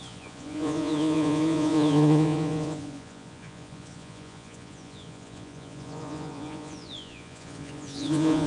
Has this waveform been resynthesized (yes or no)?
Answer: yes